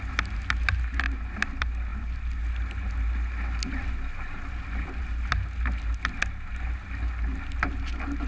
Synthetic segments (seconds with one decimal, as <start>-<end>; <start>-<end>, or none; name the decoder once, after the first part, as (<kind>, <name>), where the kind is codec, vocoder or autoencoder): none